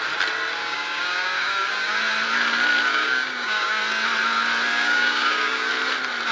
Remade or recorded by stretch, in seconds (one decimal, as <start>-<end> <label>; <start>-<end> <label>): 0.0-0.6 recorded; 0.6-1.9 remade; 1.9-2.9 recorded; 2.9-3.8 remade; 3.8-4.7 recorded; 4.7-5.7 remade; 5.7-6.3 recorded